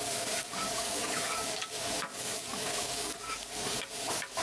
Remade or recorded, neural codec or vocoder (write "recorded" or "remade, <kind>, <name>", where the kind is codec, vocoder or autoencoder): remade, codec, DAC